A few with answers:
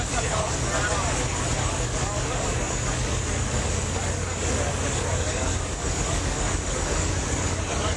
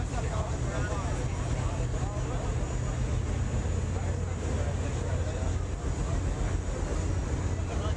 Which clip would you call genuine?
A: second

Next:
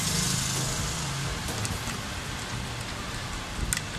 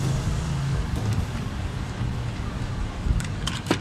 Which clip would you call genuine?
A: first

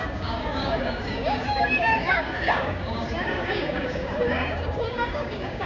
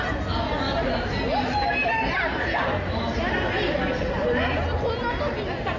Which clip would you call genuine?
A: second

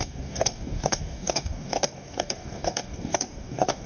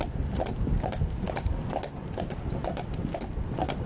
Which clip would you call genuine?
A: second